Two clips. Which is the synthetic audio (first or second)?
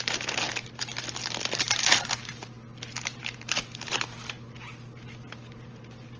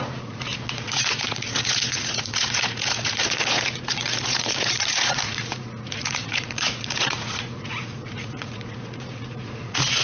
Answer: second